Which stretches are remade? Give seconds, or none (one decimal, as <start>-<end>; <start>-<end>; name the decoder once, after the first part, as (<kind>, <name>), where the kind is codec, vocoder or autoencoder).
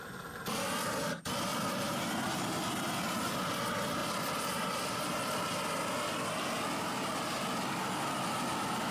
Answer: 4.0-5.1 (vocoder, BigVGAN v2)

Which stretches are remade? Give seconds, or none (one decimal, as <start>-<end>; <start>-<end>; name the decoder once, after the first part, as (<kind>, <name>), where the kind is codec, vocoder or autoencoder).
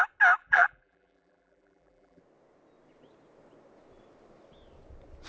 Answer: 0.4-2.2 (vocoder, BigVGAN v2)